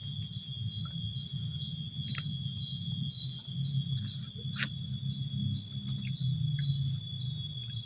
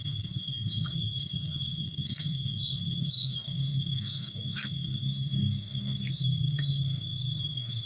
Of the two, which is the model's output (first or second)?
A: second